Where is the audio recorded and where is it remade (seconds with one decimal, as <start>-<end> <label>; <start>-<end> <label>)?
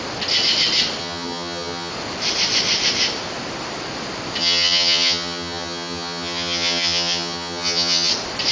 0.0-1.0 recorded; 1.0-1.9 remade; 1.9-4.4 recorded; 4.4-8.1 remade; 8.1-8.5 recorded